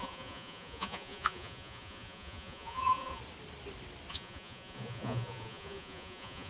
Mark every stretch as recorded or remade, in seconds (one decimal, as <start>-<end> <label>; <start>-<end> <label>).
0.0-3.2 remade; 3.2-4.1 recorded; 4.1-6.5 remade